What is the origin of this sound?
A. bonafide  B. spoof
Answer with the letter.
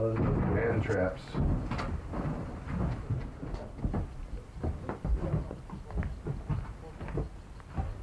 A